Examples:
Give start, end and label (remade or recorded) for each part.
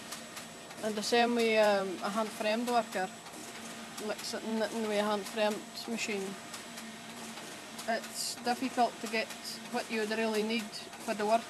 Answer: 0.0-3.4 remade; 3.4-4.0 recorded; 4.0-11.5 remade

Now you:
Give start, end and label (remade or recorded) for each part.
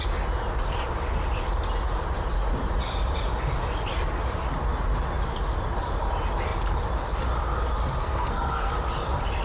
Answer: 0.0-8.0 recorded; 8.0-8.7 remade; 8.7-9.4 recorded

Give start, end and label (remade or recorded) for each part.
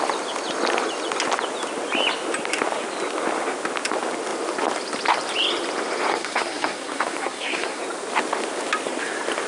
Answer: 0.0-6.1 recorded; 6.1-7.8 remade; 7.8-9.5 recorded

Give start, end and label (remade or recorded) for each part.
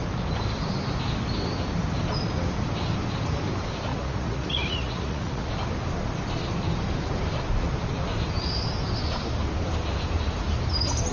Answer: 0.0-3.9 recorded; 3.9-5.5 remade; 5.5-11.1 recorded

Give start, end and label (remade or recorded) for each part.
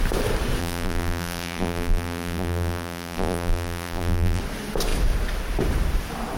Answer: 0.0-0.6 recorded; 0.6-4.4 remade; 4.4-6.4 recorded